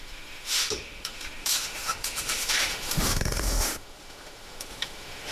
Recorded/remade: remade